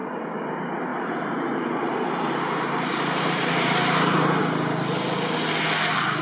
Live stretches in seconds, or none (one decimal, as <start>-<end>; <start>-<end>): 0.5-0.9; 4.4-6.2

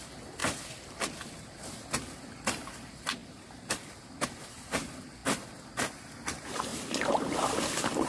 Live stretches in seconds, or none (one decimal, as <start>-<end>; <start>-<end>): 0.0-0.4; 1.2-3.2; 4.0-8.1

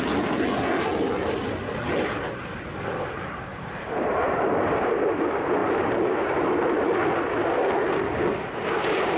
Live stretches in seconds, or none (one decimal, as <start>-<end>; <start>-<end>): 0.0-3.5; 5.1-5.6; 6.4-9.2

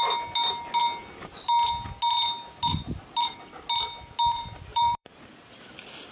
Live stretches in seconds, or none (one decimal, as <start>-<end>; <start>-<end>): 0.0-4.7; 5.5-6.1

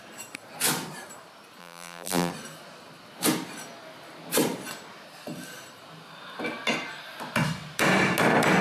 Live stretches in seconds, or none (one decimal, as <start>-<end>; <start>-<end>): 0.0-1.6; 2.3-8.6

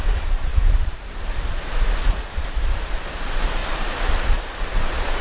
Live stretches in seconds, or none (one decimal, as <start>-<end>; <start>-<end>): none